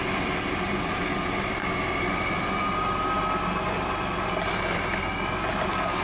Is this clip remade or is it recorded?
recorded